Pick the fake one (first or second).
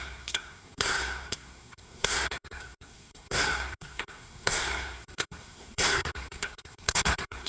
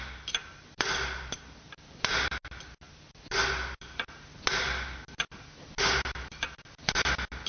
first